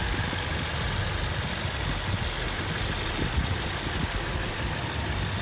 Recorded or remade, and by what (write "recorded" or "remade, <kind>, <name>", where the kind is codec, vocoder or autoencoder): recorded